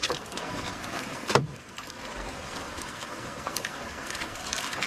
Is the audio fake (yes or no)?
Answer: yes